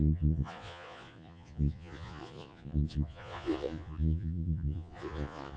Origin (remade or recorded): remade